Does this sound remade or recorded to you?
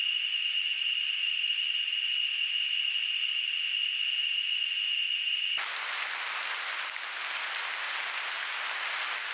recorded